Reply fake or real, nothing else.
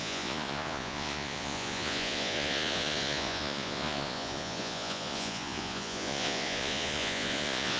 fake